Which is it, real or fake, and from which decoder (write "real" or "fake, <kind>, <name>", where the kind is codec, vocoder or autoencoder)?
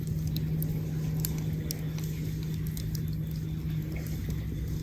real